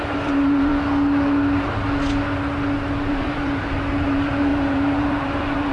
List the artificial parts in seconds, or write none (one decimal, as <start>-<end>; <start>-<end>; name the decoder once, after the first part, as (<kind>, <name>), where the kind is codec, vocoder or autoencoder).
0.0-0.7 (vocoder, BigVGAN v2); 3.1-5.7

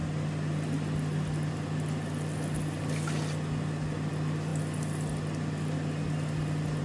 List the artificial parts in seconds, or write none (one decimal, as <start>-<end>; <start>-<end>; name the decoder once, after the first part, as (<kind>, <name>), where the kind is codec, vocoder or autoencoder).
none

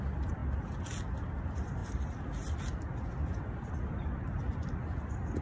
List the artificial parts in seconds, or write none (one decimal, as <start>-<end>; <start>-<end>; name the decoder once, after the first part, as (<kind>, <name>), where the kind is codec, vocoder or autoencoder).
0.0-0.4 (vocoder, BigVGAN v2); 1.3-5.4

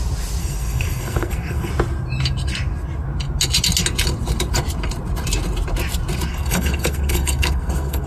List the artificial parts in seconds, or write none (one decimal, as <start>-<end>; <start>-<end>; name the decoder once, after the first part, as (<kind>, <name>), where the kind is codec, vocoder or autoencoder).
0.4-1.7 (codec, SNAC); 6.3-8.1

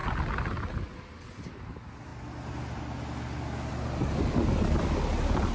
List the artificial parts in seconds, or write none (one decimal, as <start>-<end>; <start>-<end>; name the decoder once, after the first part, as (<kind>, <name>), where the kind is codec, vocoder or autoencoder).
none

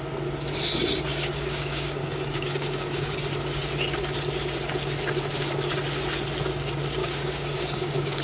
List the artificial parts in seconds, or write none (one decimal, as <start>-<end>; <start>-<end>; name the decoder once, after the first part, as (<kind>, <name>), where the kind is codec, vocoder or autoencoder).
1.1-3.1 (codec, DAC); 7.0-8.2

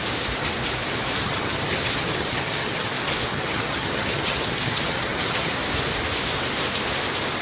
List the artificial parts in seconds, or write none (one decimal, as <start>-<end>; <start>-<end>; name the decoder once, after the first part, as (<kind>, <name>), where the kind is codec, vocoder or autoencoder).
1.2-2.9 (vocoder, HiFi-GAN); 3.3-5.5